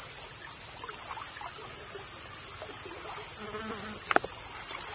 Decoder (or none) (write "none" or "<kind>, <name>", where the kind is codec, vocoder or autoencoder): none